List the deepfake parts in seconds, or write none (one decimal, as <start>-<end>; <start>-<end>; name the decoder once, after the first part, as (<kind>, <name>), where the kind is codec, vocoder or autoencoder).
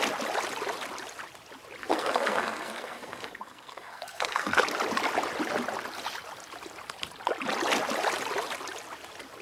1.8-4.6 (codec, SNAC)